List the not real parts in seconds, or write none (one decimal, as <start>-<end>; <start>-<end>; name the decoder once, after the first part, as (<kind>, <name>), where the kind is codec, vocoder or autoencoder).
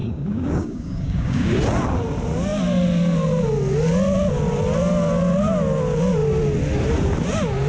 0.0-1.6 (codec, DAC)